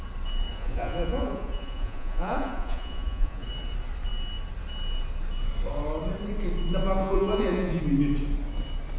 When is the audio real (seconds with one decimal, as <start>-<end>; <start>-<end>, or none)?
0.0-0.5; 3.5-7.0; 7.8-9.0